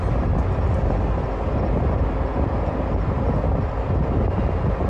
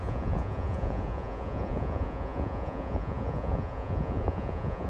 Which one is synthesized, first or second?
second